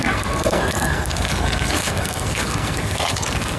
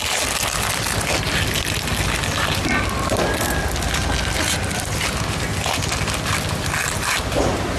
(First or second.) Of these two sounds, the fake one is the first